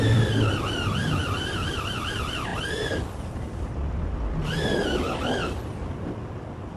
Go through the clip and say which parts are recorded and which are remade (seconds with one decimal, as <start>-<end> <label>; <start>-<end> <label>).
0.0-6.8 recorded